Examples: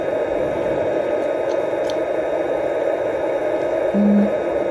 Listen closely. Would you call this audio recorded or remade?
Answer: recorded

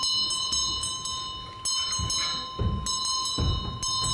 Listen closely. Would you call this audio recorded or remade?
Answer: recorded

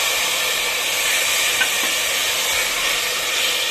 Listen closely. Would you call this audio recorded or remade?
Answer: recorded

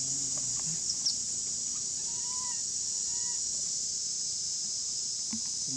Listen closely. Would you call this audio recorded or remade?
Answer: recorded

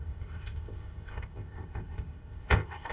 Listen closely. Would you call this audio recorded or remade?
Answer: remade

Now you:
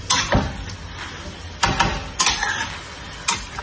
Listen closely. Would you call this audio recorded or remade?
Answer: recorded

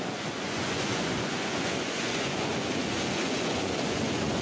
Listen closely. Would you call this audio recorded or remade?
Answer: remade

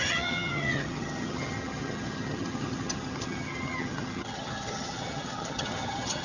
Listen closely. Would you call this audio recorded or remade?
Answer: remade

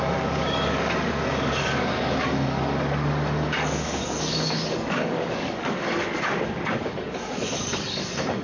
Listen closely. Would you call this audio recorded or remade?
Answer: remade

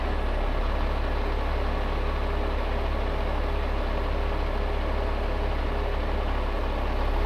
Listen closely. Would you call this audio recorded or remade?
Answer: recorded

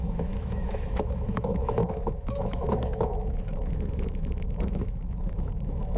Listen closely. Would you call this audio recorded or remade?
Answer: remade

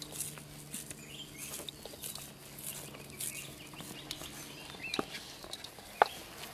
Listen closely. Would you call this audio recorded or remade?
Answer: recorded